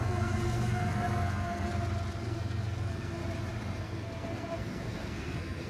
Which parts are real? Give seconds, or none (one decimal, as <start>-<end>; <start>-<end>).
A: 1.7-2.2; 3.2-3.8